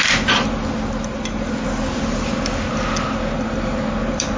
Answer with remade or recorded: recorded